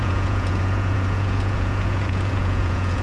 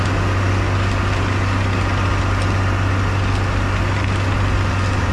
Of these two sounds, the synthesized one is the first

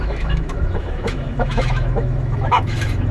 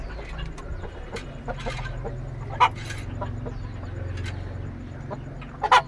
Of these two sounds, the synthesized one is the first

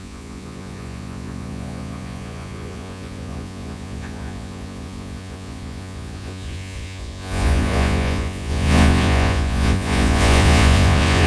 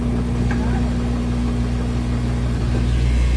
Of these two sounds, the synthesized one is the first